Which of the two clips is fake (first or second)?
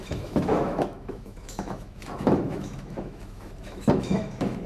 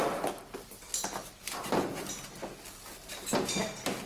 first